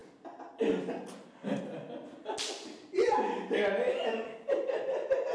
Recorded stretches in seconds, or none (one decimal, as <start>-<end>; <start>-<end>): 0.0-5.3